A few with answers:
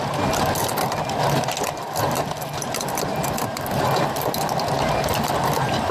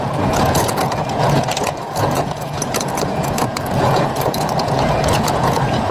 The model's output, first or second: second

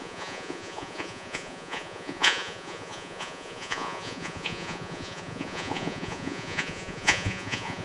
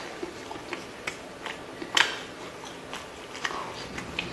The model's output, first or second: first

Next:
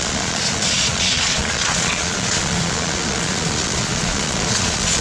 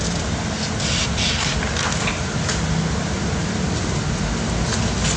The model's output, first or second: first